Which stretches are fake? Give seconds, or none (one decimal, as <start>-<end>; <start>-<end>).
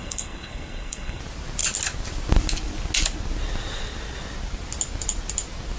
0.0-1.2